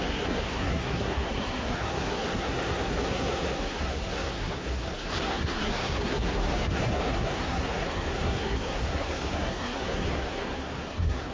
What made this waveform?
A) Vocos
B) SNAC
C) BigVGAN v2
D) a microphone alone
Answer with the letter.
B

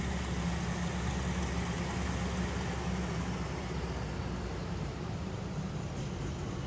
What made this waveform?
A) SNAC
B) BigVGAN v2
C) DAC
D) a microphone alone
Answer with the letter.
D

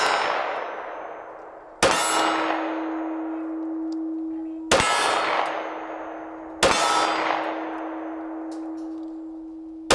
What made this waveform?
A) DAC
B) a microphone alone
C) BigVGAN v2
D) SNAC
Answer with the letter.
B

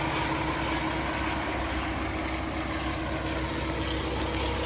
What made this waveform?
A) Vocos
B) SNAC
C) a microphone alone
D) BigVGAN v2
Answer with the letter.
C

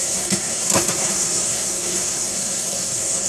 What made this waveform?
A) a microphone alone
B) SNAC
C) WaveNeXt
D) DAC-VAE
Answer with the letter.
B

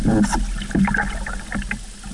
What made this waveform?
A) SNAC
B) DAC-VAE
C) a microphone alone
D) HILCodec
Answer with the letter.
C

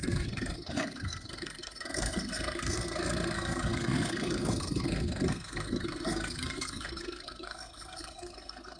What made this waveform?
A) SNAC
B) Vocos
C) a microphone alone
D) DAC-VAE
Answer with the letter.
A